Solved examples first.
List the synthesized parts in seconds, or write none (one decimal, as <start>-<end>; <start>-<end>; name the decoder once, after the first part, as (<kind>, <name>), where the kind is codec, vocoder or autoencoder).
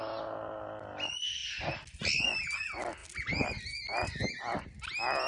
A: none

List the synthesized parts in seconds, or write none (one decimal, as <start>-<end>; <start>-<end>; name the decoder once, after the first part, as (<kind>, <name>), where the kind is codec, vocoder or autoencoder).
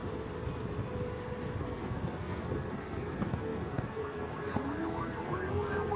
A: 1.6-6.0 (codec, SNAC)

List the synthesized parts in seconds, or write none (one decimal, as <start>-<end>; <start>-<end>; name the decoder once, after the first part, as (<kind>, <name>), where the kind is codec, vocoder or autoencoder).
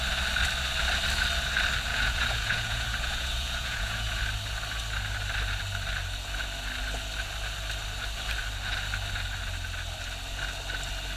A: 1.9-4.2 (vocoder, Vocos)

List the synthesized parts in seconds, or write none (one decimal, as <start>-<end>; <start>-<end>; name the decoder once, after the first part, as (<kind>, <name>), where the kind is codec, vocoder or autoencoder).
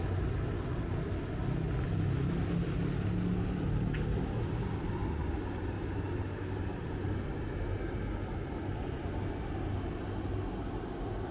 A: 5.0-6.2 (vocoder, BigVGAN v2)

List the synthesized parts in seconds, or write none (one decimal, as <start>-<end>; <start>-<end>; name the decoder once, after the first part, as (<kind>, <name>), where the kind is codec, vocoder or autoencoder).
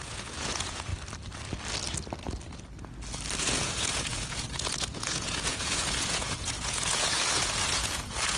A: 0.0-0.9 (vocoder, Vocos); 3.4-8.4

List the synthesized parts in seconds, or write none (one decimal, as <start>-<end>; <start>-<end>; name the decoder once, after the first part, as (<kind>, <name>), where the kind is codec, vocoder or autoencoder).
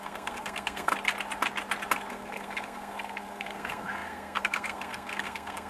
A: 0.0-0.9 (codec, SNAC); 2.1-5.7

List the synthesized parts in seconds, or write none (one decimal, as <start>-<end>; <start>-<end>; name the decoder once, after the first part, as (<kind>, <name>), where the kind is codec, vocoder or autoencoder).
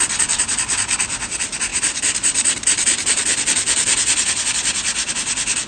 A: none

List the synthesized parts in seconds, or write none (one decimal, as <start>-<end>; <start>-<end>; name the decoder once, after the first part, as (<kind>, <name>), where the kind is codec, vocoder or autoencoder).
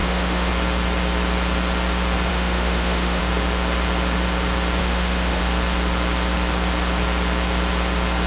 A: 0.0-0.5 (autoencoder, DAC-VAE); 2.3-3.2; 4.8-5.4